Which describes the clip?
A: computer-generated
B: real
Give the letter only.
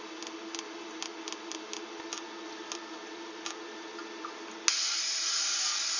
B